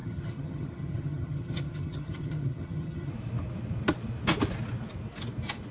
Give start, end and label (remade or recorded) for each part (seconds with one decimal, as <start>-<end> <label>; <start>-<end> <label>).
0.0-3.1 remade; 3.1-5.7 recorded